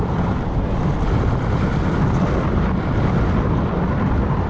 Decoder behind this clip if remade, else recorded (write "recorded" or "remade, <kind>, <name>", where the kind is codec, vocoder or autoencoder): recorded